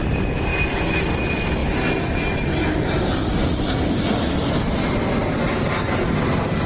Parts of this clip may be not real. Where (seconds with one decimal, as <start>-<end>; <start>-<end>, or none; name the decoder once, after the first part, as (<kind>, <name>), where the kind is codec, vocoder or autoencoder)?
none